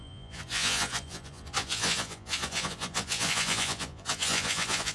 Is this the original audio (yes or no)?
no